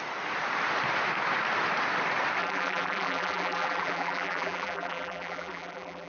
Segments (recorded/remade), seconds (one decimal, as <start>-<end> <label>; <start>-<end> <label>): 0.0-2.4 recorded; 2.4-6.1 remade